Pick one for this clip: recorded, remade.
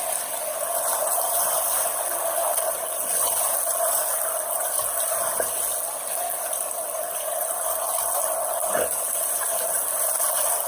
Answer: recorded